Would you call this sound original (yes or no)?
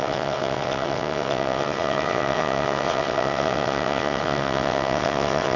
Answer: no